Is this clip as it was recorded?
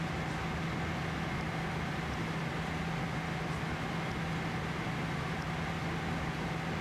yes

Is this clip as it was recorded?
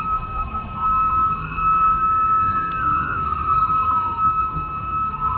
no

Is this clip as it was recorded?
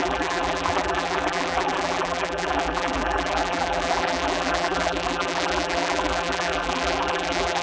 no